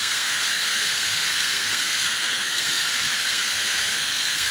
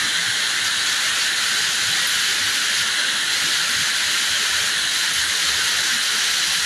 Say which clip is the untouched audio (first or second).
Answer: second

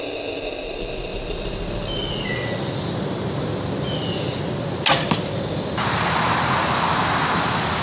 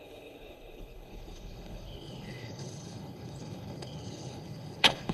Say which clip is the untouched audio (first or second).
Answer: first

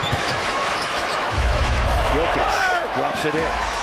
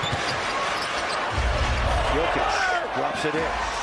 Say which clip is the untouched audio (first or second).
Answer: second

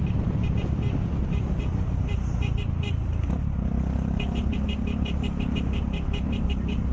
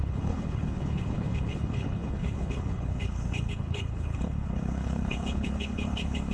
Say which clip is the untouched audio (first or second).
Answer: first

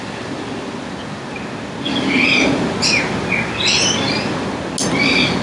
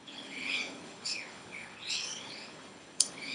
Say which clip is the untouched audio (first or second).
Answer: first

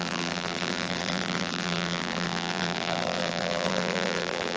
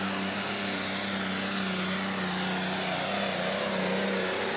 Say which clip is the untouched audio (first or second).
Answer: second